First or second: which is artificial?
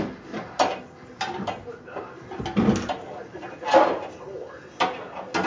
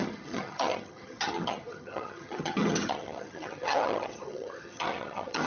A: second